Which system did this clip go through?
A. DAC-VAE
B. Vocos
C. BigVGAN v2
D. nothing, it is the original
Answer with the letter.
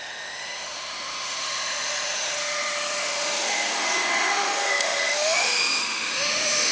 A